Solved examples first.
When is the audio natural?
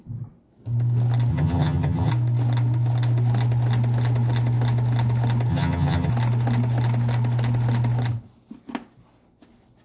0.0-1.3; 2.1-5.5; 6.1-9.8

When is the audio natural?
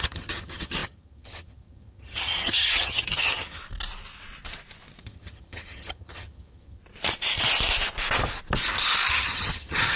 3.6-5.0; 6.8-9.1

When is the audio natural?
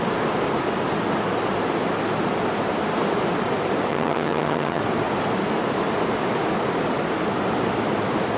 0.0-3.9; 4.8-8.4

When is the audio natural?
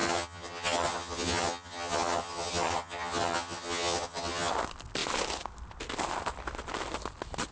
4.5-7.5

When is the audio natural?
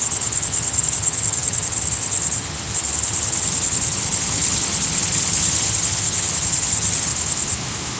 7.1-8.0